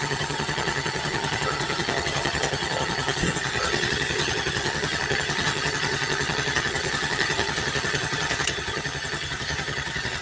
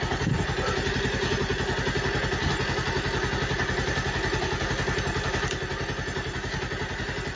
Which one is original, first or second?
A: second